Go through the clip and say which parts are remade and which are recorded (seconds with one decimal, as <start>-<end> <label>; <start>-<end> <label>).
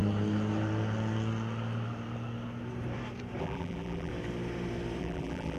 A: 0.0-3.4 recorded; 3.4-4.1 remade; 4.1-5.0 recorded; 5.0-5.6 remade